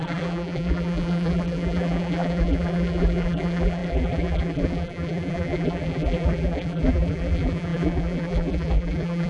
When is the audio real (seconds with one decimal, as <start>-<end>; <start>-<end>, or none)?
none